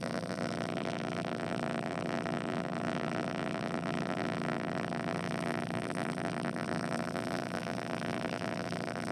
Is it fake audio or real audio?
fake